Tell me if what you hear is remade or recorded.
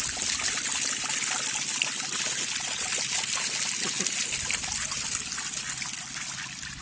recorded